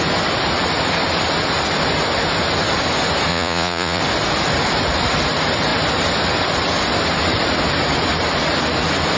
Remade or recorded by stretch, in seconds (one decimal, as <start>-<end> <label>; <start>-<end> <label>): 0.0-3.3 recorded; 3.3-4.0 remade; 4.0-9.2 recorded